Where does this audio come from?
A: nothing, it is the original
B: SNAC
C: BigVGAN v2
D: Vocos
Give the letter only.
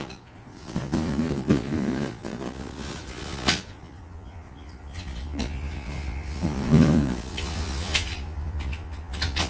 D